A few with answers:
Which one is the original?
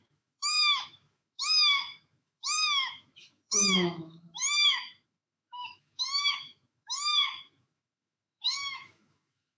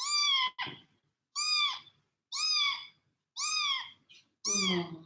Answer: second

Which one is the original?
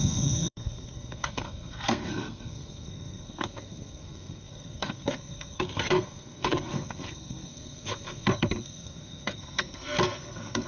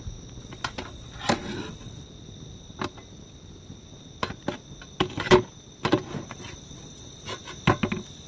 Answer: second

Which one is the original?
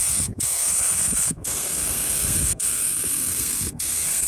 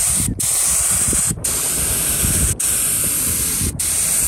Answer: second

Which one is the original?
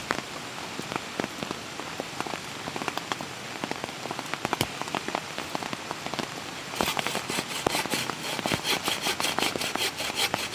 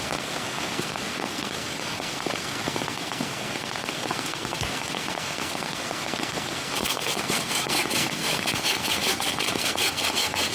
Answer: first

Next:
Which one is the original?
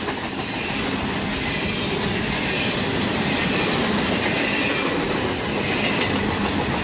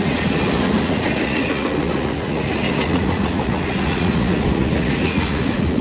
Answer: first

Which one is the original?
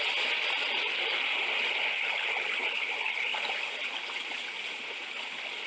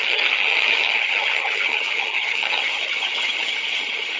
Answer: first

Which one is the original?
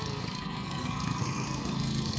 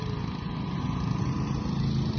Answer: second